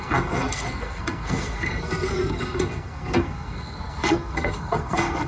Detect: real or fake fake